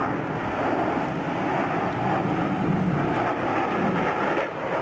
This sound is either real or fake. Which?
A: real